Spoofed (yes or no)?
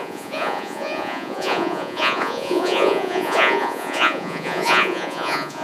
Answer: yes